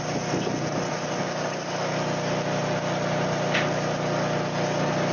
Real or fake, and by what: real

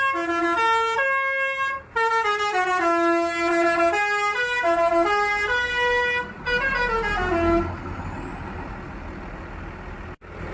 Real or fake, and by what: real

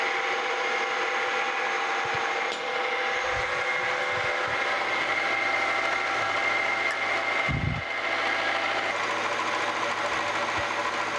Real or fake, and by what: real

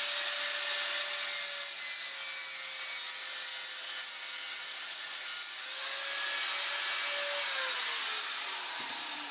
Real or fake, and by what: real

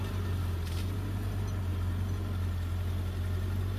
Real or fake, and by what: real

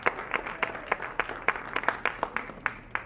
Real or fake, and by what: real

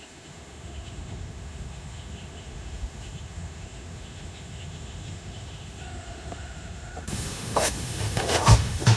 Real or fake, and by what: fake, autoencoder, DAC-VAE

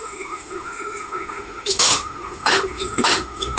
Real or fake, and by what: fake, autoencoder, DAC-VAE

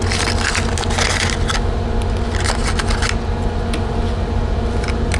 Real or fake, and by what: real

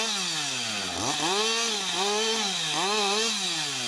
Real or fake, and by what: real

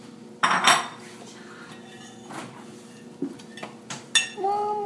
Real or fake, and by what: real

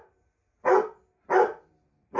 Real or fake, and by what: real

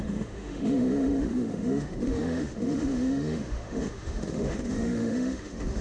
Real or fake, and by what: fake, autoencoder, DAC-VAE